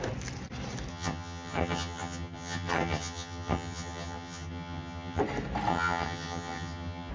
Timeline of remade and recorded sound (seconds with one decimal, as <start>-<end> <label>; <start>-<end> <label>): 0.0-0.9 recorded; 0.9-5.2 remade; 5.2-5.7 recorded; 5.7-7.1 remade